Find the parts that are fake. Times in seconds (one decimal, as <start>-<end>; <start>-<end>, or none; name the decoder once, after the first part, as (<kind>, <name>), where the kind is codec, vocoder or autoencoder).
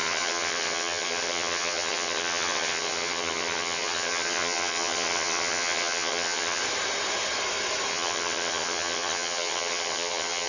0.0-6.6 (vocoder, HiFi-GAN); 7.9-10.5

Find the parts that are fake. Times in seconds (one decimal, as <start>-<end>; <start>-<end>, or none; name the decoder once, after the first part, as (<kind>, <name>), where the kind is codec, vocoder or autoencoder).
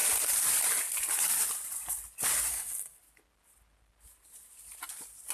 2.5-3.0 (codec, SNAC)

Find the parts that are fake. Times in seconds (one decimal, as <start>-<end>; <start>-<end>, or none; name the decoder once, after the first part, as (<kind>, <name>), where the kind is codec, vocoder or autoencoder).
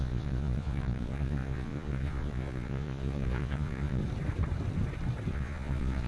0.0-4.0 (vocoder, Vocos); 5.3-6.1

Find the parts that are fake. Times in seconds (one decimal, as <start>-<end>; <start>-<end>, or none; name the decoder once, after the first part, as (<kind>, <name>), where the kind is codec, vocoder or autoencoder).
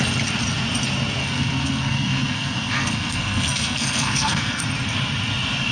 1.2-4.6 (codec, SNAC)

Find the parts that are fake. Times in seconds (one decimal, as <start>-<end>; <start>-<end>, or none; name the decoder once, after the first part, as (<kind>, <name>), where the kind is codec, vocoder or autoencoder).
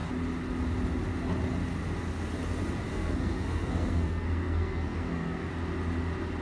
2.9-5.5 (codec, SNAC)